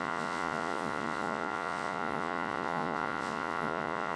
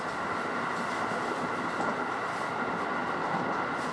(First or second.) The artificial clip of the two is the first